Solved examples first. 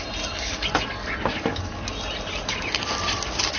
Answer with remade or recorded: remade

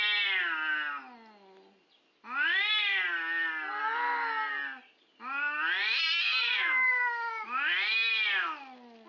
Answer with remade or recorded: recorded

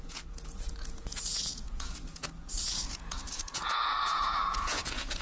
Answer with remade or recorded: remade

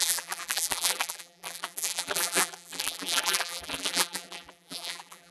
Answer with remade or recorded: remade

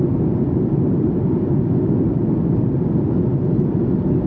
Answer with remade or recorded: recorded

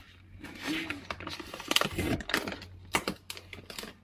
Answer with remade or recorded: recorded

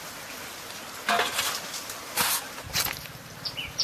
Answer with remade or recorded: recorded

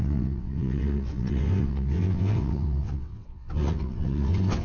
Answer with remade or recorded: remade